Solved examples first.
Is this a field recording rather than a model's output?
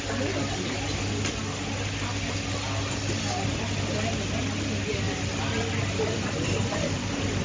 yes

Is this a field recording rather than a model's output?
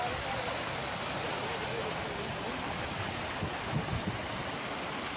yes